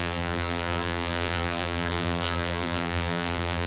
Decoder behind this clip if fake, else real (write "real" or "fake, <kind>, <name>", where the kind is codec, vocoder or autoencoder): fake, vocoder, BigVGAN v2